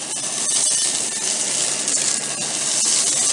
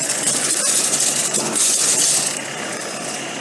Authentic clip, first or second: first